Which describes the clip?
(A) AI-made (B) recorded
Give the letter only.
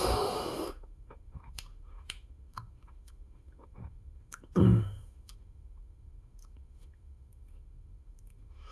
A